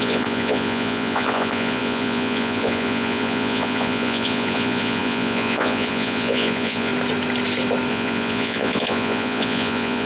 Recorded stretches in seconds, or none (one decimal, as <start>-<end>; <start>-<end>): 6.9-7.9